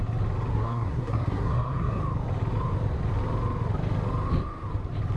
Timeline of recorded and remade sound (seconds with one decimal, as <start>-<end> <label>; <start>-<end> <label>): 0.0-0.5 recorded; 0.5-2.0 remade; 2.0-5.2 recorded